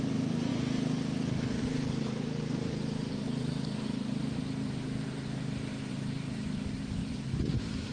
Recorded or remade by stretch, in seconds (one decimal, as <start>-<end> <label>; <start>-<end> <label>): 0.0-0.5 remade; 0.5-1.6 recorded; 1.6-7.9 remade